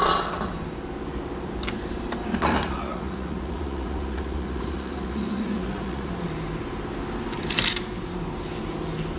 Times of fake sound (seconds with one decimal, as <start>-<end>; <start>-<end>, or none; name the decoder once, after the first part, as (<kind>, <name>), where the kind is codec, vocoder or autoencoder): 2.3-6.1 (vocoder, Vocos)